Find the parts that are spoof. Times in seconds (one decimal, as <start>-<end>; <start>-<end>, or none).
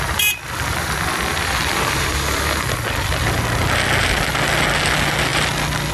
none